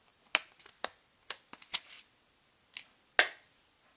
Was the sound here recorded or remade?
recorded